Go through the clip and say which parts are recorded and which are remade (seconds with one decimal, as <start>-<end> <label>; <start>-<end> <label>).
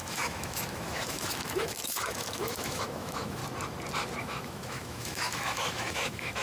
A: 0.0-3.4 remade; 3.4-4.2 recorded; 4.2-6.4 remade